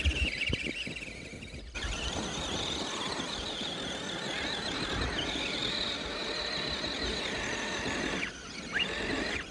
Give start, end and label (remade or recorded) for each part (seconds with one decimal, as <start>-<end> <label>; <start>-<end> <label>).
0.0-9.5 recorded